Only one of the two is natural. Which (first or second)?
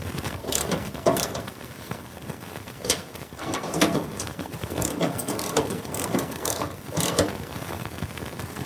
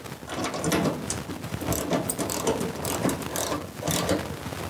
second